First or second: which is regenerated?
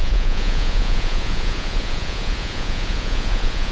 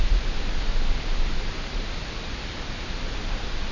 first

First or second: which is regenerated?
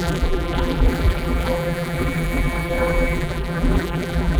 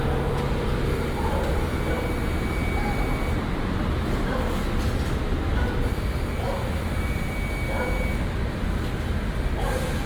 first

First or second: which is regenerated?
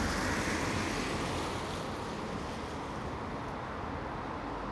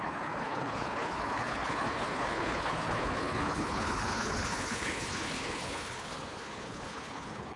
second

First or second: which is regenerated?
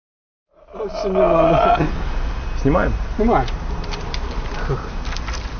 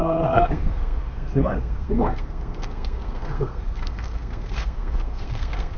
second